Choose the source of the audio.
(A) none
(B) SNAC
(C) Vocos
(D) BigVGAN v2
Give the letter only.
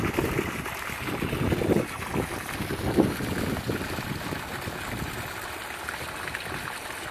A